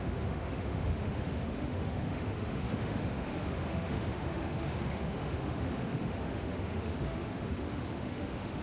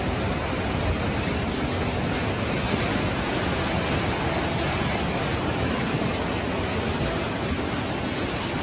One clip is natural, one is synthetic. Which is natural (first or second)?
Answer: second